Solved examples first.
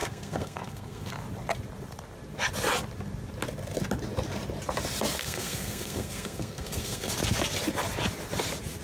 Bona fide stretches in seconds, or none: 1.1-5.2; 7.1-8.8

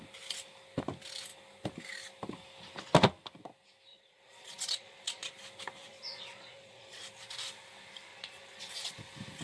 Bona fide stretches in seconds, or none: 0.0-3.9; 5.3-5.8; 7.0-8.1; 8.9-9.4

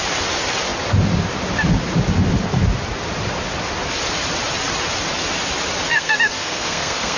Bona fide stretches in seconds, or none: 0.0-5.9

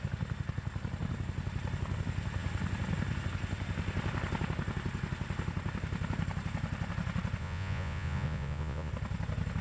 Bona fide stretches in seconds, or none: 0.0-7.4; 8.9-9.6

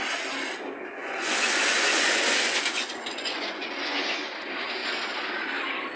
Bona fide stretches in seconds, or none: 0.0-1.0; 4.3-6.0